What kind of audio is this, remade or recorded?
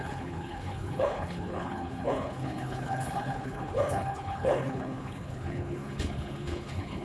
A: remade